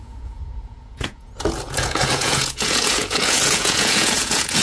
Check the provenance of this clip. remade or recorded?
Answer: remade